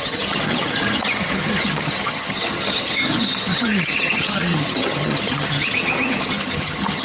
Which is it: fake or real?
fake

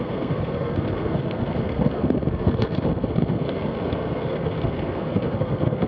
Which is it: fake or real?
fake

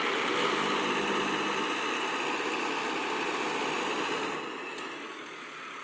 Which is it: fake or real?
real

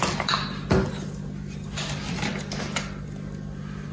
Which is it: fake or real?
real